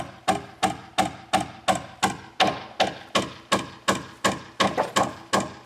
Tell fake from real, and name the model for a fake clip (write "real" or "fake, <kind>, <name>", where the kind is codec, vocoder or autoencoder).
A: real